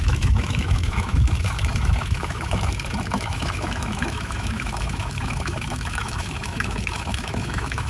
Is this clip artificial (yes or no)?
yes